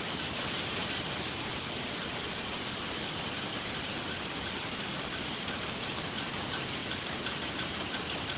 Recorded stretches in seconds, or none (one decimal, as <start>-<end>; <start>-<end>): 3.5-4.8